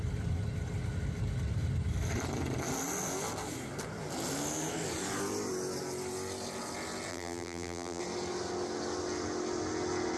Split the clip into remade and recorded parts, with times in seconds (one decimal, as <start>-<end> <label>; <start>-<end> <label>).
0.0-7.1 recorded; 7.1-8.0 remade; 8.0-10.2 recorded